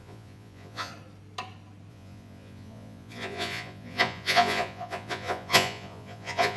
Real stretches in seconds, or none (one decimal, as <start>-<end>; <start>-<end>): 0.9-1.9